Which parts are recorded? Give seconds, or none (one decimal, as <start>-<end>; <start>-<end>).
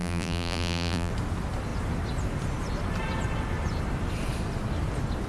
1.1-5.3